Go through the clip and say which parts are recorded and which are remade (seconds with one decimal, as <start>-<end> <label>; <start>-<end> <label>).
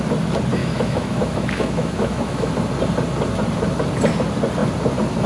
0.0-0.6 recorded; 0.6-2.5 remade; 2.5-5.3 recorded